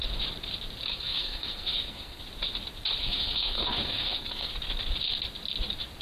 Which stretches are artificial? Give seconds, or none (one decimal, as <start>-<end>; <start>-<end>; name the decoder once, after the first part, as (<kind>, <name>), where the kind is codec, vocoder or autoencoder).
0.9-2.2 (codec, SNAC); 3.0-4.5